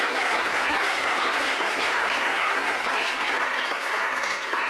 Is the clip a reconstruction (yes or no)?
yes